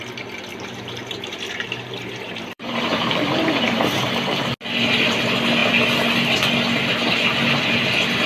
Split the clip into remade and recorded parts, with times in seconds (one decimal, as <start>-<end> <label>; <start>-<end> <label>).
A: 0.0-0.5 recorded; 0.5-4.1 remade; 4.1-8.3 recorded